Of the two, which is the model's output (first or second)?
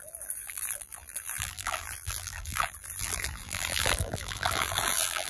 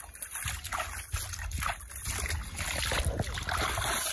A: first